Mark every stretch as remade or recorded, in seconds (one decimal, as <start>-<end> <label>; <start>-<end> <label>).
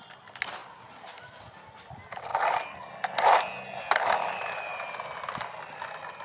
0.0-6.2 recorded